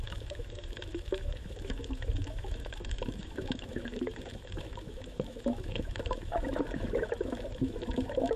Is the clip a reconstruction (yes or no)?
yes